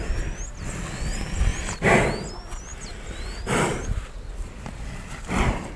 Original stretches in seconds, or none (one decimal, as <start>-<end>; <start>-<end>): 0.0-1.5; 2.1-2.7